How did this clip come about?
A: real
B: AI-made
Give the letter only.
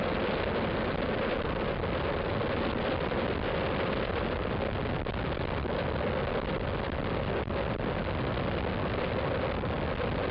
A